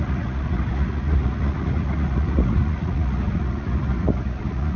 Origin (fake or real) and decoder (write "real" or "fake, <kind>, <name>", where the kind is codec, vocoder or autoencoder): fake, vocoder, Vocos